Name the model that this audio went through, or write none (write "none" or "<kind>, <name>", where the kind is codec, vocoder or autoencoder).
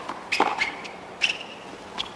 none